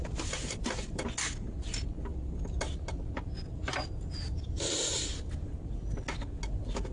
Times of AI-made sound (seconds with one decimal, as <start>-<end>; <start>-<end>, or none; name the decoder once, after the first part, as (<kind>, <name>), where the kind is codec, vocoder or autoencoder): none